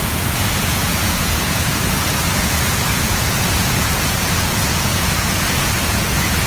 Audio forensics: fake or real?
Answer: fake